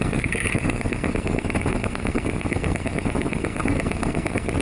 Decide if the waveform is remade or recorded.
remade